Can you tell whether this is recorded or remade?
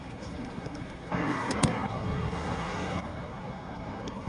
remade